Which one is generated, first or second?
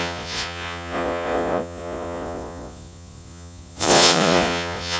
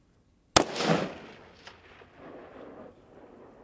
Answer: first